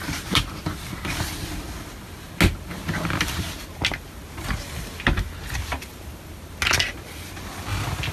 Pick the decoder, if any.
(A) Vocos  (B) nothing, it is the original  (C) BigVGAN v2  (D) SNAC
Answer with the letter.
B